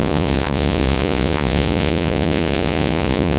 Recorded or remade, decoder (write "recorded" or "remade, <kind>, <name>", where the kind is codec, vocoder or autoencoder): remade, vocoder, Vocos